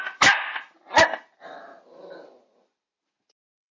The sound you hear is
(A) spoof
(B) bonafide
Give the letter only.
A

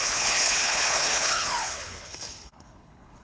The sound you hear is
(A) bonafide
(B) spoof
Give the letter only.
B